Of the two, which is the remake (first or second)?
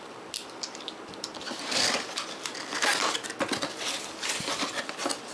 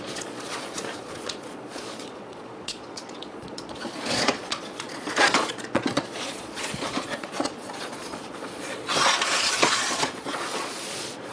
second